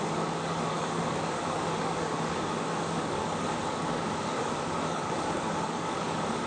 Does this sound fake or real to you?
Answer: fake